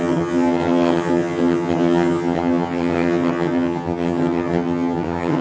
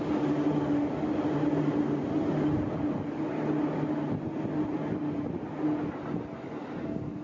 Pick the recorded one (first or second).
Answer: second